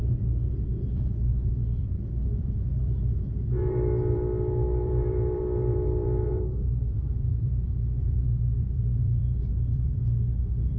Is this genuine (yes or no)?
no